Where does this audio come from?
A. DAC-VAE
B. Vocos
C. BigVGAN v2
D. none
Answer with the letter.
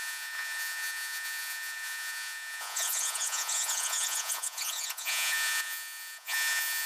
B